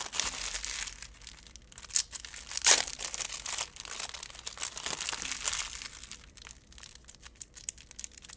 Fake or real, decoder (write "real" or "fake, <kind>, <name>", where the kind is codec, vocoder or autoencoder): real